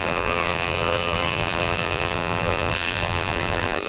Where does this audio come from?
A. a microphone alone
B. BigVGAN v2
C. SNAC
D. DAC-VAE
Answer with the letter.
B